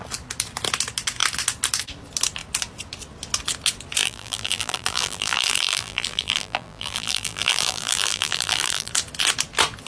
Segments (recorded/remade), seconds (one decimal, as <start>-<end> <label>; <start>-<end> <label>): 0.0-4.0 recorded; 4.0-8.9 remade; 8.9-9.9 recorded